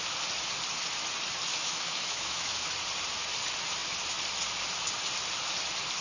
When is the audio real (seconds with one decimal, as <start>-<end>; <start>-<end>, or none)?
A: 0.0-1.5; 2.7-6.0